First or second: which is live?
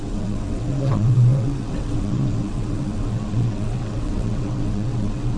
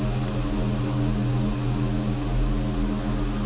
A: second